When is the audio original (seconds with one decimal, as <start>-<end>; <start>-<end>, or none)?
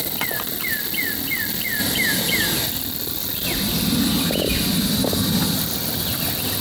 0.0-6.6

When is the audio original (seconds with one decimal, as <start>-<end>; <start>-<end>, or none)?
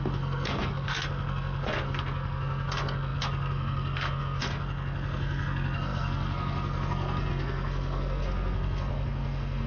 none